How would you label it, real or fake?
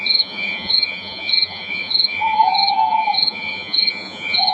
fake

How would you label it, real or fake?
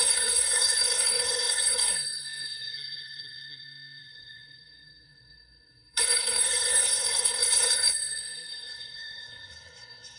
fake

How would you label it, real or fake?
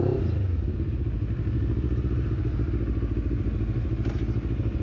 real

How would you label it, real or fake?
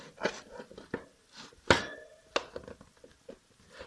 real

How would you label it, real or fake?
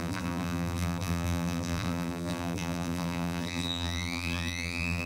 fake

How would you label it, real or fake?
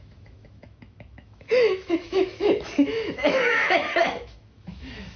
fake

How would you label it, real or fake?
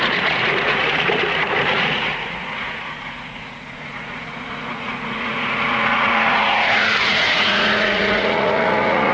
fake